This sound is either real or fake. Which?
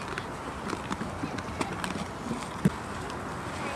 real